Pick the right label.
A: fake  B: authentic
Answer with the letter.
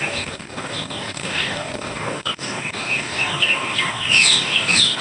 A